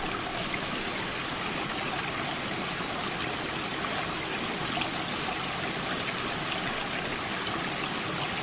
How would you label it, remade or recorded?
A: recorded